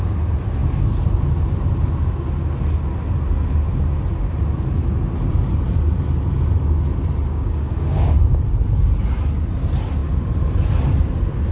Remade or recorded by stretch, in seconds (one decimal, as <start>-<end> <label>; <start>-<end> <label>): 0.0-7.3 recorded; 7.3-8.4 remade; 8.4-11.5 recorded